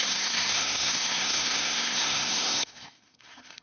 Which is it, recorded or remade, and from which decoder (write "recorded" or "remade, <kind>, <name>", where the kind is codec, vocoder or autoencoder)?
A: remade, codec, SNAC